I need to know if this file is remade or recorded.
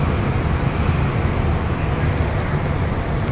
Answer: recorded